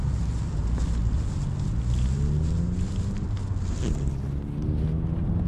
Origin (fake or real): real